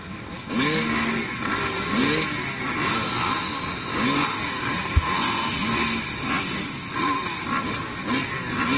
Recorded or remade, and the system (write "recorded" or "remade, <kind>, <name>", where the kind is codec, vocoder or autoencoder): recorded